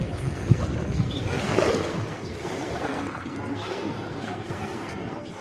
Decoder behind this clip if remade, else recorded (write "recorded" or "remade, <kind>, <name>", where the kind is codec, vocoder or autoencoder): remade, codec, SNAC